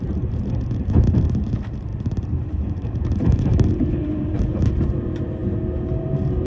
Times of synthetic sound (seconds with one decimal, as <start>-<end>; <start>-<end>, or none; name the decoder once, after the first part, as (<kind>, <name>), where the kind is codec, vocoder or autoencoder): 0.0-5.4 (vocoder, BigVGAN v2); 6.0-6.5